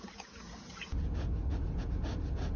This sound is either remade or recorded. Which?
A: remade